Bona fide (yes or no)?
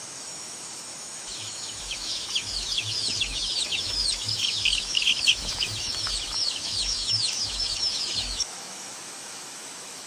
no